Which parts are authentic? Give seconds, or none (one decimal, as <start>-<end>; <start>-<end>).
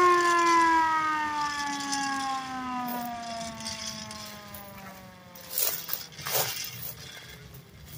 0.0-2.9; 3.8-8.0